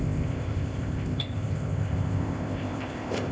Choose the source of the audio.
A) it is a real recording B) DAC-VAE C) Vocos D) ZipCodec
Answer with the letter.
D